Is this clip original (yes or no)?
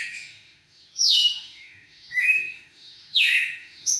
no